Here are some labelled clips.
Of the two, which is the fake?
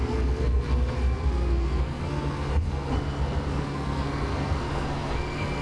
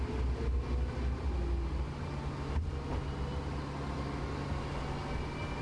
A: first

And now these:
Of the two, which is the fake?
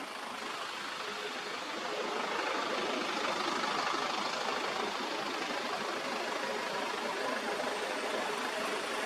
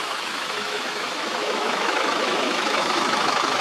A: second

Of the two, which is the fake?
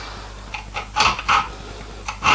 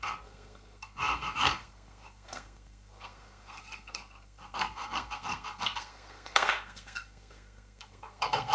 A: second